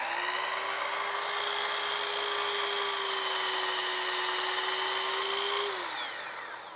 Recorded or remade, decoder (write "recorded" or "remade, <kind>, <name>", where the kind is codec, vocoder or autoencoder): recorded